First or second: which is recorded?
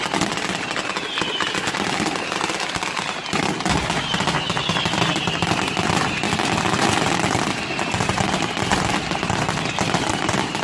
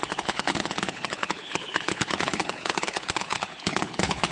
first